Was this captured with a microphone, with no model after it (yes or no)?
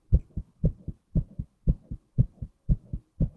yes